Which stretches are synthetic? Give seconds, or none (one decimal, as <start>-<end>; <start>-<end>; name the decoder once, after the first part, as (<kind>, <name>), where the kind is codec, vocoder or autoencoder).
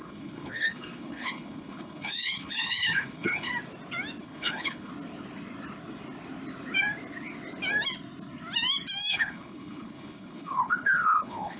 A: 0.0-3.5 (codec, HILCodec); 4.2-4.9; 9.1-11.6